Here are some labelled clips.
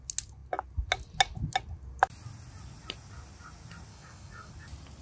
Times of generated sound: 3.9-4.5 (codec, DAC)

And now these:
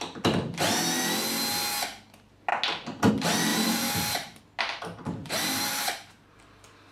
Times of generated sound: 3.5-4.4 (vocoder, BigVGAN v2); 5.2-6.4